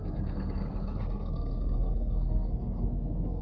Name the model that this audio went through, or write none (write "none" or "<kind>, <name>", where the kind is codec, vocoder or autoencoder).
codec, SNAC